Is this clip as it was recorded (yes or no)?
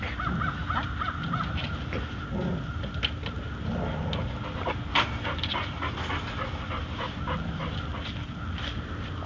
yes